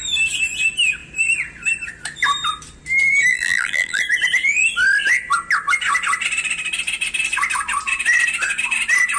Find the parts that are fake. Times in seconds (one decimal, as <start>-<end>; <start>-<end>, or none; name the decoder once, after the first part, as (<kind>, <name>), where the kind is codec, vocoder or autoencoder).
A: 3.3-4.0 (vocoder, BigVGAN v2)